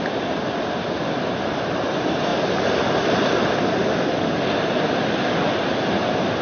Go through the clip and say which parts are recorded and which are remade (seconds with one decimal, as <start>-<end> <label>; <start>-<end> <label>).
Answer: 0.0-6.4 recorded